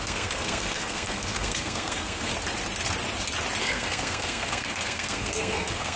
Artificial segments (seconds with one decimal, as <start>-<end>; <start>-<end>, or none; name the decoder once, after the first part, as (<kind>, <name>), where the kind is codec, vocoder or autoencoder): 0.0-2.3 (codec, SNAC); 3.6-6.0